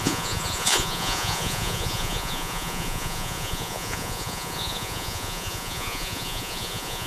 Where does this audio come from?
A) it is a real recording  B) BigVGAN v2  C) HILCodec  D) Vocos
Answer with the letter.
D